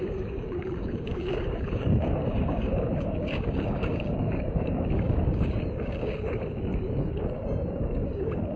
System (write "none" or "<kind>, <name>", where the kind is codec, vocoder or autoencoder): codec, DAC